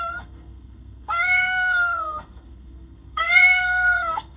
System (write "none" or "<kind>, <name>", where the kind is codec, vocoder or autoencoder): codec, SNAC